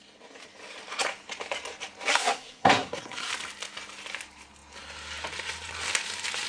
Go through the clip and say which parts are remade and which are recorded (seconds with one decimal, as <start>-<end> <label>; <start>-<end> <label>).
0.0-2.1 recorded; 2.1-3.3 remade; 3.3-6.5 recorded